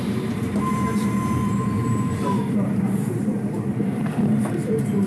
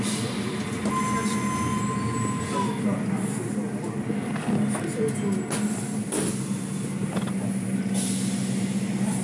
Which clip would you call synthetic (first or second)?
first